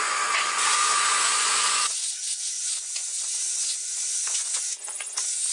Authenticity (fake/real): fake